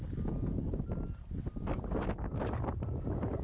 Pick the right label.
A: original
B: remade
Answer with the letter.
A